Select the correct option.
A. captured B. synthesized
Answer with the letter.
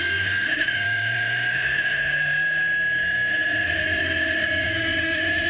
B